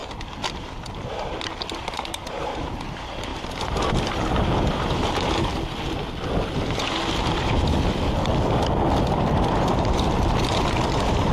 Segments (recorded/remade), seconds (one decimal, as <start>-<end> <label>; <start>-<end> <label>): 0.0-1.9 recorded; 1.9-5.5 remade; 5.5-9.0 recorded; 9.0-11.3 remade